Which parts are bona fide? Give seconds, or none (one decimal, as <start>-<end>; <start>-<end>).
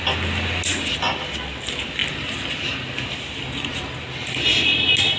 0.0-5.2